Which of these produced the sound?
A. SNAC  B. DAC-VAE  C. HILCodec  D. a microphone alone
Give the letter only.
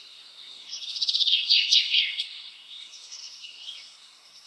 A